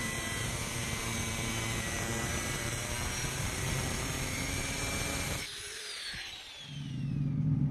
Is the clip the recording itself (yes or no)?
no